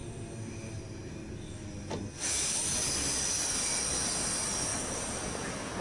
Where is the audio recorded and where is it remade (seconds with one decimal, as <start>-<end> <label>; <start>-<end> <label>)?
0.0-5.8 recorded